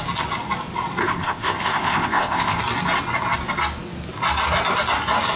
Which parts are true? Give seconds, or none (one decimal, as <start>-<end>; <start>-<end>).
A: 0.0-1.0; 2.6-5.4